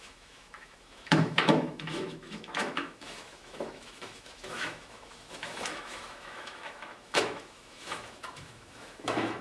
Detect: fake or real fake